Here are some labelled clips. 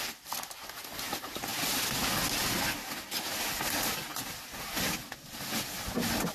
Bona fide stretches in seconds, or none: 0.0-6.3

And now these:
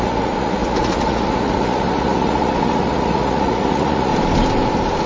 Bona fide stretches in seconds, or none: 4.1-5.1

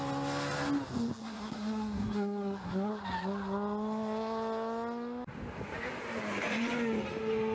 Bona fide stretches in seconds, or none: 0.0-1.2; 2.9-7.5